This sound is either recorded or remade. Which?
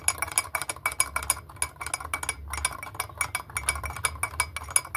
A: recorded